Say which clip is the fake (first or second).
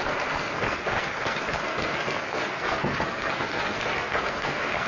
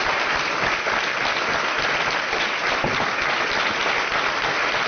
first